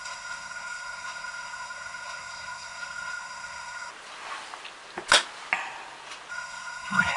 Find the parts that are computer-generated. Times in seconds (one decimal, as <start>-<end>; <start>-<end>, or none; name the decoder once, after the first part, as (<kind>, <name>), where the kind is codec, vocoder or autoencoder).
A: 0.0-3.9 (codec, SNAC); 6.3-7.2